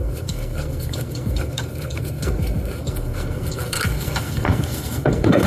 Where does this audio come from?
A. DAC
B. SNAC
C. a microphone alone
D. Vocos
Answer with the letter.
B